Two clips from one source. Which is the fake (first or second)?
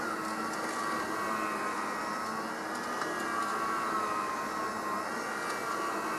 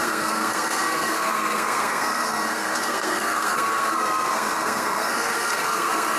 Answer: second